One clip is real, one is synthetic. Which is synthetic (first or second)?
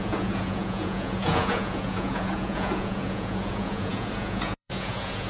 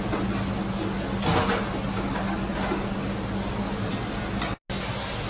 first